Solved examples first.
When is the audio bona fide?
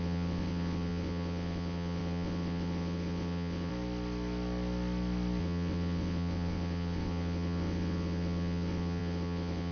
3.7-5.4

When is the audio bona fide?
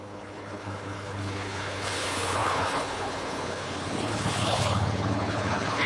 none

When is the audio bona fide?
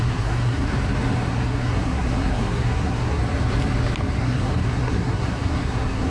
0.7-1.3; 3.2-4.2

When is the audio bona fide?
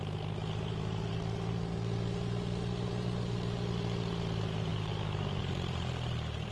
0.0-4.7; 5.4-6.5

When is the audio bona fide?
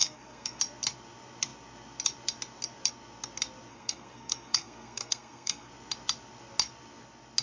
0.6-3.7; 5.7-7.4